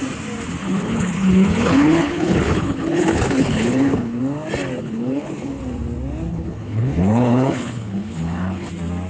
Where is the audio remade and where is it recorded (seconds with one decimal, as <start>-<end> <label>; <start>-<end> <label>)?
0.0-0.6 recorded; 0.6-4.2 remade; 4.2-4.8 recorded; 4.8-5.6 remade; 5.6-6.3 recorded; 6.3-8.7 remade; 8.7-9.1 recorded